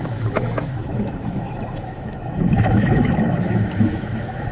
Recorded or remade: remade